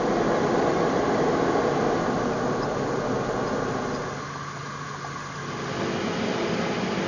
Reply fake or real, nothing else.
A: real